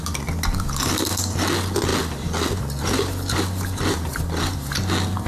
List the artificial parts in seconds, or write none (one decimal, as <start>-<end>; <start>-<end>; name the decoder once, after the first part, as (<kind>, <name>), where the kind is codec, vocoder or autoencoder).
none